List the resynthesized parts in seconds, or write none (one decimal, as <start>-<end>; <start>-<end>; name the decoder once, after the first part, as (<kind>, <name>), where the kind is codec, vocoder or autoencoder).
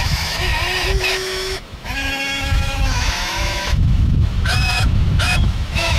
0.0-0.5 (autoencoder, DAC-VAE); 1.0-6.0